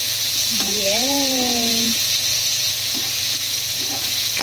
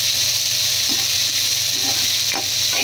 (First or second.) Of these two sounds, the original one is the second